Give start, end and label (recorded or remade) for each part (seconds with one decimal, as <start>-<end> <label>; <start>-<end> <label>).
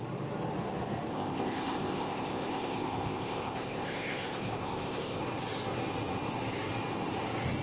0.0-1.1 recorded; 1.1-5.2 remade; 5.2-7.6 recorded